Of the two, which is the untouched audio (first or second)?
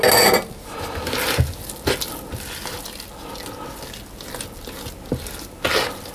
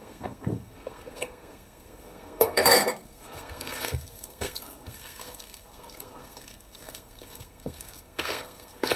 first